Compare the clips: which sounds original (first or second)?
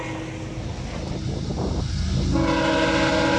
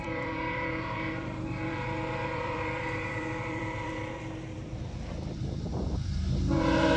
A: first